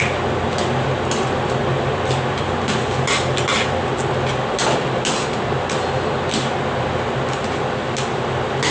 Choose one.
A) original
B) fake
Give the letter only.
A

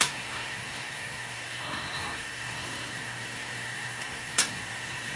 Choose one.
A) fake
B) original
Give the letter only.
A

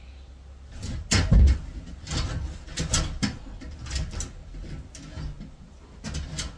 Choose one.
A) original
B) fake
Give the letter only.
A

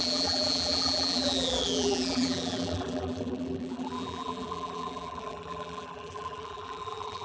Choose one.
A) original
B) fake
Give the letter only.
B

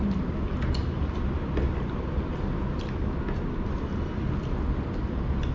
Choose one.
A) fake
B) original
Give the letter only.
B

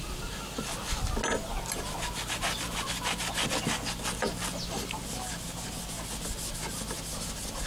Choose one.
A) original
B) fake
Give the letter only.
A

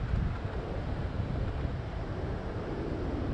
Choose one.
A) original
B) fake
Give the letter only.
B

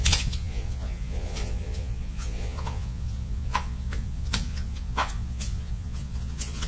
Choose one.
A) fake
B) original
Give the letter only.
A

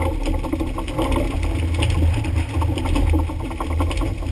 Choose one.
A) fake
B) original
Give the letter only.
B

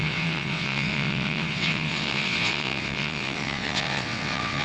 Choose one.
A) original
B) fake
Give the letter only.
B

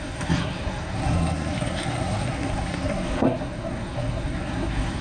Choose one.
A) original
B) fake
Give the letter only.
B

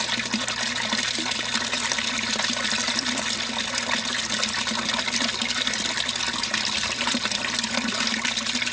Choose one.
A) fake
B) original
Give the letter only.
B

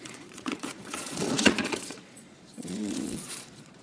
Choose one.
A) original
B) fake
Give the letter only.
B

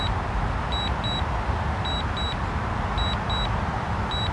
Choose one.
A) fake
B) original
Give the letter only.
B